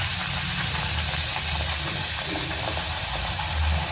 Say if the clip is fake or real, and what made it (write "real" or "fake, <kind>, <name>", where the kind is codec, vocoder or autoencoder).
real